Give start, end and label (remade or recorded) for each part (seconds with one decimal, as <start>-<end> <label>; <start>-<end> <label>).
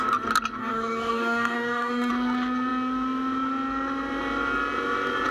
0.0-0.6 recorded; 0.6-2.1 remade; 2.1-5.3 recorded